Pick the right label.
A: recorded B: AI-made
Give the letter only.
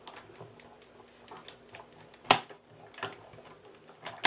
A